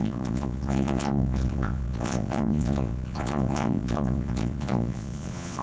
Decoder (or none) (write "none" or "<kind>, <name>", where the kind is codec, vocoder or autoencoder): vocoder, Vocos